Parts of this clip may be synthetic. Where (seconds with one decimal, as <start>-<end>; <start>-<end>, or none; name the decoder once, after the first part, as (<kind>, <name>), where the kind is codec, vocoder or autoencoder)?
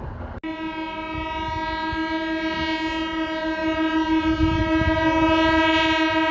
none